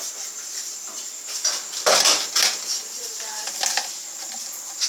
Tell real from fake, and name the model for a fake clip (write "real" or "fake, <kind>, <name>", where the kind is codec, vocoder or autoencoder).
fake, vocoder, BigVGAN v2